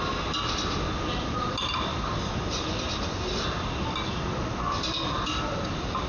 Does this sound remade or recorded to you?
recorded